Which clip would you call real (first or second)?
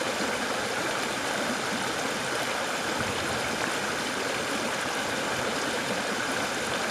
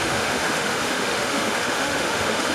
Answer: first